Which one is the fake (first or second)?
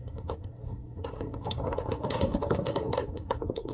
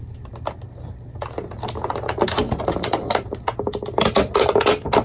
first